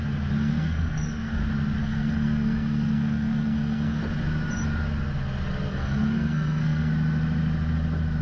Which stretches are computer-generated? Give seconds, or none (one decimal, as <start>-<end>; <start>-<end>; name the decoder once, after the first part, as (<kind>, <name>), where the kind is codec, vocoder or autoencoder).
0.4-1.4 (codec, SNAC); 1.8-4.0; 5.7-6.9